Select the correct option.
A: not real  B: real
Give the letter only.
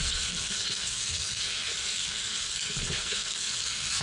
A